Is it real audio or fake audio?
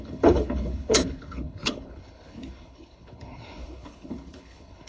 fake